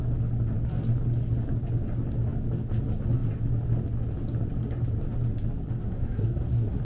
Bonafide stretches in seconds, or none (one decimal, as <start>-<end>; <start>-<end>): 0.0-5.8